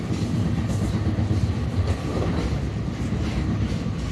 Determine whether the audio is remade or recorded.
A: recorded